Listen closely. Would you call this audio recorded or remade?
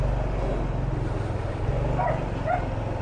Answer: recorded